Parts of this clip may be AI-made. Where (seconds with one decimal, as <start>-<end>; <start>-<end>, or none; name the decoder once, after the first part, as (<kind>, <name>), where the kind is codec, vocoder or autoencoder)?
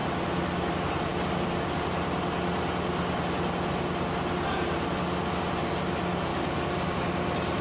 none